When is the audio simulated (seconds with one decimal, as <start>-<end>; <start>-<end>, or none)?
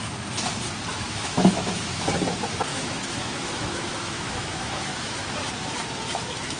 0.9-2.1; 2.7-5.5